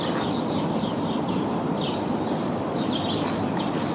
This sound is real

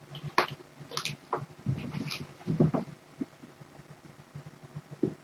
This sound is real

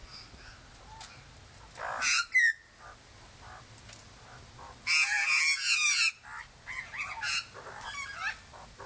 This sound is real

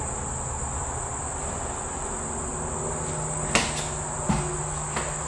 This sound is real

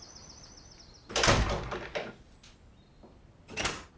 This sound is real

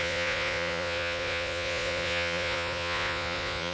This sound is fake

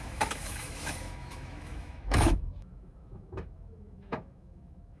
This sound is fake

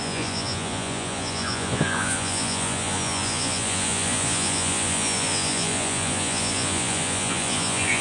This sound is fake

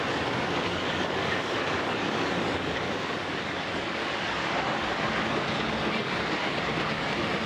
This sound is fake